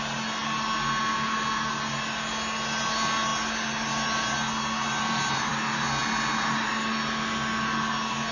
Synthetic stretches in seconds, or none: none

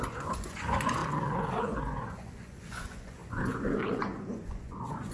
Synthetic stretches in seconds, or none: 0.0-1.0; 1.6-5.1